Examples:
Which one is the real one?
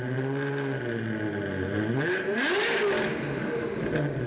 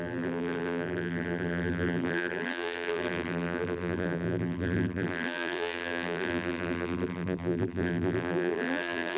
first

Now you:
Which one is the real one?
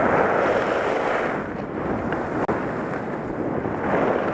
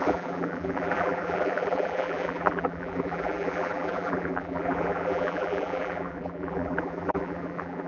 first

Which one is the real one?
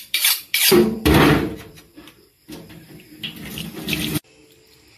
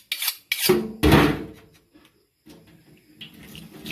second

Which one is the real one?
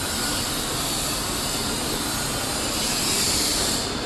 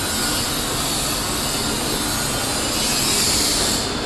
second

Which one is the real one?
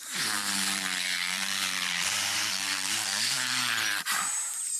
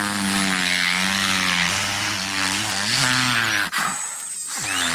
second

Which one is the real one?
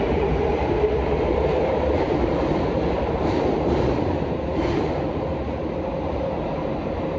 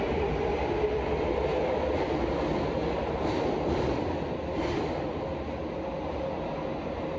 second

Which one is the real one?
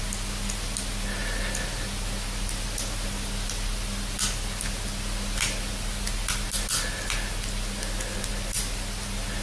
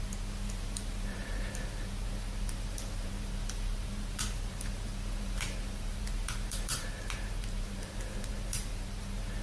first